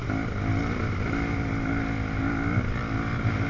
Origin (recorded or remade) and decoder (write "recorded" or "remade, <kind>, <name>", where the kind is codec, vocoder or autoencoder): recorded